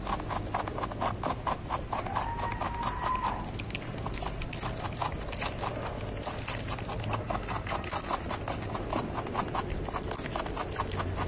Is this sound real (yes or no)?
yes